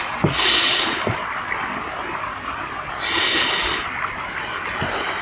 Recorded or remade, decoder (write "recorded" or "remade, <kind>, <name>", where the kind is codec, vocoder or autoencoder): recorded